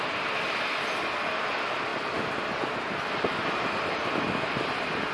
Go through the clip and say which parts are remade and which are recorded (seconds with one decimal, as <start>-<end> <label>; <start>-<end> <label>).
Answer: 0.0-5.1 recorded